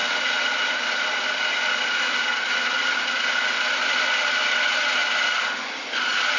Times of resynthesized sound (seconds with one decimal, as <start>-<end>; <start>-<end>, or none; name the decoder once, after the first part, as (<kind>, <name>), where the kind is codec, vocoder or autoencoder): none